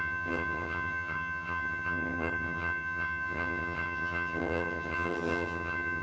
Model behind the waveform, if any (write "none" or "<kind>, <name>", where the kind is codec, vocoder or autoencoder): vocoder, HiFi-GAN